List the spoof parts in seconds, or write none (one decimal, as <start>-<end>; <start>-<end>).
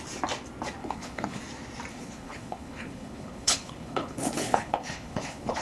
0.8-1.4; 1.9-5.6